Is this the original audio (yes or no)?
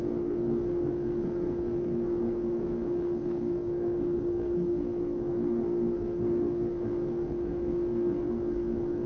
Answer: no